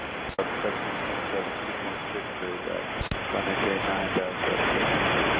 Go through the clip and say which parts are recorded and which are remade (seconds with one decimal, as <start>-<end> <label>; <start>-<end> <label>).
0.0-5.4 recorded